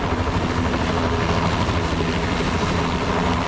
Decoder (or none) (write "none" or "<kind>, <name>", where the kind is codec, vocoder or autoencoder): none